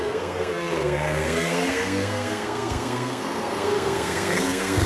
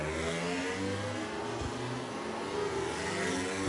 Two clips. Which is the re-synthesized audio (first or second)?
first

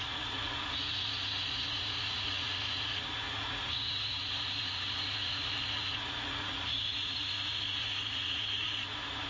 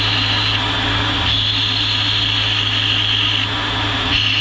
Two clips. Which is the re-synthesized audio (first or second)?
first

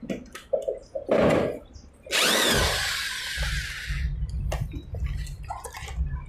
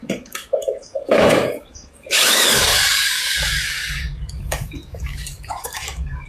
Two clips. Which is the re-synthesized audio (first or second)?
second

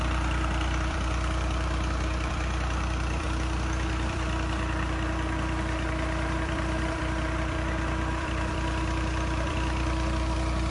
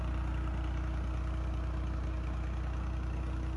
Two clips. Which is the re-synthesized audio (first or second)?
first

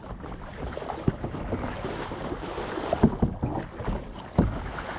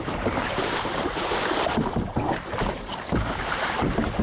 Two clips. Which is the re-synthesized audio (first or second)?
second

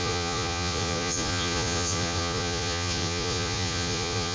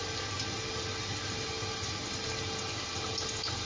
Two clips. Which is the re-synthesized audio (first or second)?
first